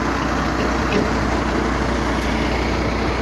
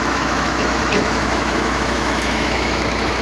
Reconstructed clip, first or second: second